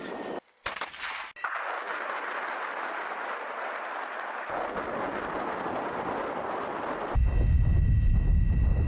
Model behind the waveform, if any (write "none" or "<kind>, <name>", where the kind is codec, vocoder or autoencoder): none